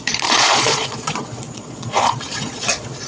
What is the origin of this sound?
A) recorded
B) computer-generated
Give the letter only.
B